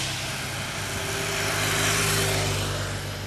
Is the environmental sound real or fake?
real